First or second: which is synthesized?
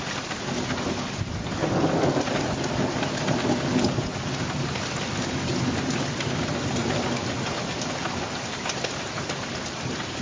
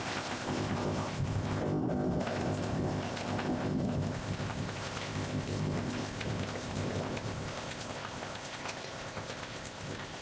second